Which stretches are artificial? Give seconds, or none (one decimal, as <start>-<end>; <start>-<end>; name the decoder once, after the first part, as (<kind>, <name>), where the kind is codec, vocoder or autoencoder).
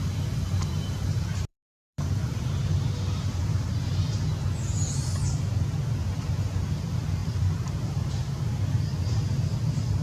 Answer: 1.5-3.7 (vocoder, BigVGAN v2); 7.2-8.4